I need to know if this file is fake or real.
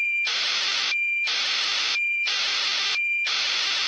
fake